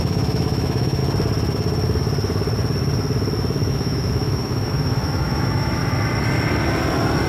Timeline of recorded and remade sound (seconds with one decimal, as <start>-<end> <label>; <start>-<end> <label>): 0.0-1.0 remade; 1.0-3.7 recorded; 3.7-5.8 remade; 5.8-7.3 recorded